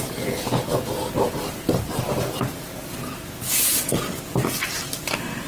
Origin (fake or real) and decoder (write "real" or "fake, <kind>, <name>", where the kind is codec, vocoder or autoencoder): real